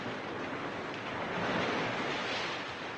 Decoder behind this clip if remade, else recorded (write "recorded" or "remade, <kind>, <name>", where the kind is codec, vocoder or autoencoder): recorded